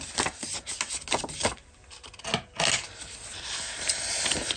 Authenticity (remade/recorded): recorded